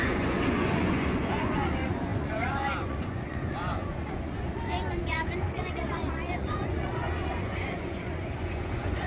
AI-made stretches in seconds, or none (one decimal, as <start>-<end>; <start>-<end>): 0.0-9.1